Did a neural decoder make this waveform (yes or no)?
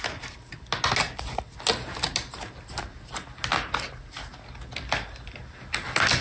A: no